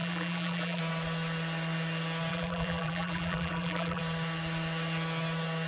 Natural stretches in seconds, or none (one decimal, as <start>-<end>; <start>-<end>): 0.8-2.3; 4.0-5.7

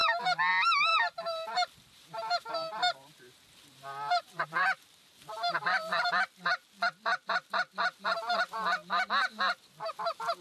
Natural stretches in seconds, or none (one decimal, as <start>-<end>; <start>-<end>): 0.0-0.9; 6.1-10.4

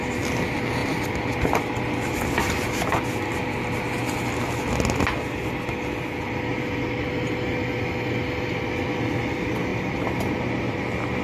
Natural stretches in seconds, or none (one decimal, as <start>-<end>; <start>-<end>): 0.0-9.7; 10.3-11.2

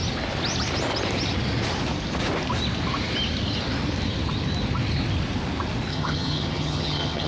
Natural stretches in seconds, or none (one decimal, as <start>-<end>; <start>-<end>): 0.0-5.9

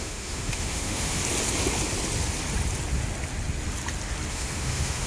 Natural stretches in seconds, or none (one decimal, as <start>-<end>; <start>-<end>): 1.2-4.3